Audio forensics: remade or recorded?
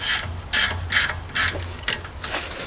recorded